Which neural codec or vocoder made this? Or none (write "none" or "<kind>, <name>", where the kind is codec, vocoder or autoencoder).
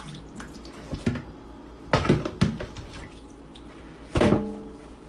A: none